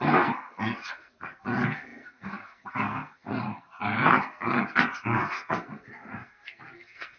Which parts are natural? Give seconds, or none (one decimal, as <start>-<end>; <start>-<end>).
none